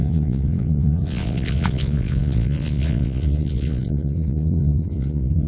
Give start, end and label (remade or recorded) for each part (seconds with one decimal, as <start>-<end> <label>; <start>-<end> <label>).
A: 0.0-5.5 remade